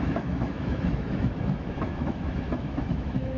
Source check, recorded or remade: remade